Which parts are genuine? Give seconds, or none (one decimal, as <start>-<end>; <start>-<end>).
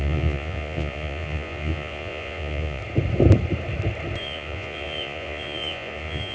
2.8-4.2